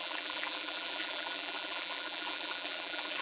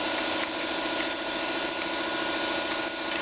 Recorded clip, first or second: second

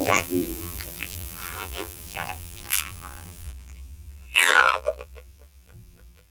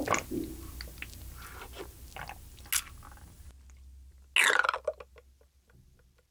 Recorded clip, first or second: second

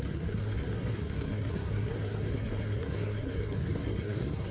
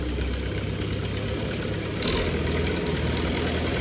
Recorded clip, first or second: second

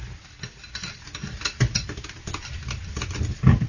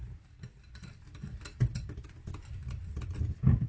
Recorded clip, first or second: first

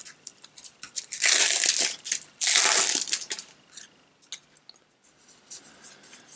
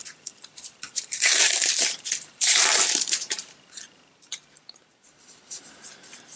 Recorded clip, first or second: first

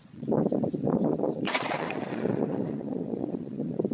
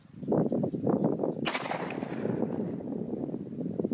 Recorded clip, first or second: second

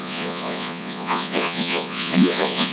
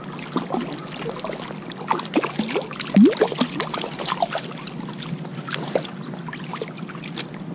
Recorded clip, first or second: second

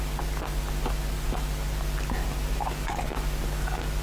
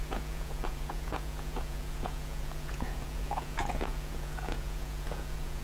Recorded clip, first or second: first